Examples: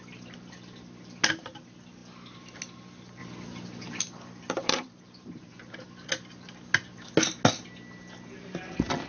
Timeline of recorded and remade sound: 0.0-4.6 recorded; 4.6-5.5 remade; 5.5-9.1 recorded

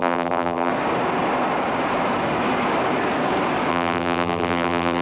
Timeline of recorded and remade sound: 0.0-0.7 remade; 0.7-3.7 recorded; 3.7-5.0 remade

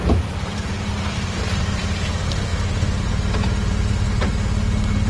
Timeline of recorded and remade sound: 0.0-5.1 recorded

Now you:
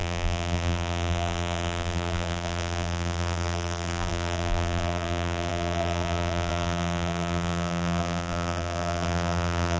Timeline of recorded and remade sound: 0.0-9.8 remade